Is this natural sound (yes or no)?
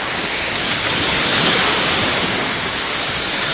no